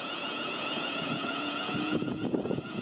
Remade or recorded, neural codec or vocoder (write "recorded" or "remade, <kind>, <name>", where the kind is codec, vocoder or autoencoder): remade, vocoder, Vocos